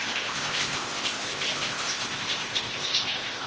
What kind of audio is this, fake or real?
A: fake